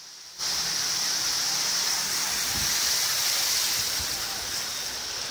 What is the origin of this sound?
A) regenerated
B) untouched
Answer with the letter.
B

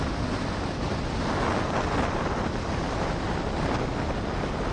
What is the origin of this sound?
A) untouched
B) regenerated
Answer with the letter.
A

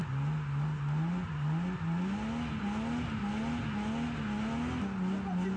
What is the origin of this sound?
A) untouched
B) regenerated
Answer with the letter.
A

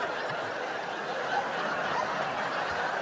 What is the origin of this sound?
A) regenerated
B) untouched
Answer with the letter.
B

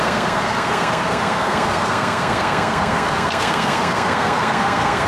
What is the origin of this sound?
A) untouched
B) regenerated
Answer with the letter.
B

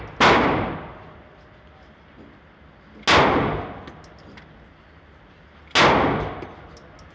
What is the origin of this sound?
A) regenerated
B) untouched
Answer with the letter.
B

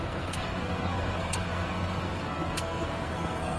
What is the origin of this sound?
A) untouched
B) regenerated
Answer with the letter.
B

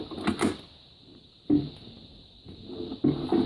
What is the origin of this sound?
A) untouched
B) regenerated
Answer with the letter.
A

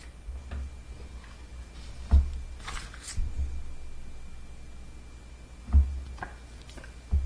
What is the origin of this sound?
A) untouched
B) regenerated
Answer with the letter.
A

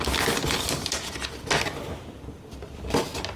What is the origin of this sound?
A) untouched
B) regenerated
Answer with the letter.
A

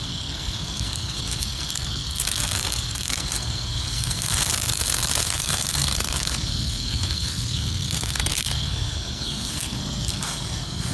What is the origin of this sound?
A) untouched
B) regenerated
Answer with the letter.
B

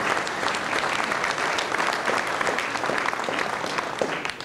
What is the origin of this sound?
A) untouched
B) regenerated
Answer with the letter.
A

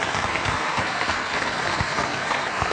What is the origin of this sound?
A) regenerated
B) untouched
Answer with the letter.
A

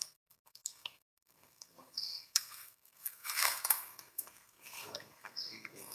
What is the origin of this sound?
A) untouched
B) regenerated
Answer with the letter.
B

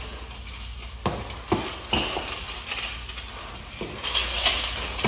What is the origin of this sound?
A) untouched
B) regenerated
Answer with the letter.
A